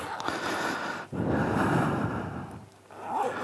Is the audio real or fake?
real